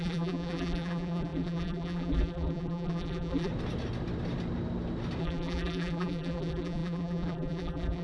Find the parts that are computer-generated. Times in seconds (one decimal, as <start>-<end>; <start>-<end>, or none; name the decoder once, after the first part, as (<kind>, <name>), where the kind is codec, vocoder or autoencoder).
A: 0.0-3.5 (vocoder, BigVGAN v2); 5.2-8.0